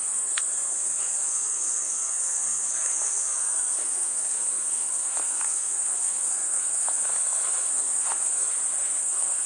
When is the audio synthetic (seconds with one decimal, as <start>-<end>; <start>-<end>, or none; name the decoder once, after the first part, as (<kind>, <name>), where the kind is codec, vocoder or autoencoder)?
0.0-8.5 (codec, SNAC); 9.0-9.5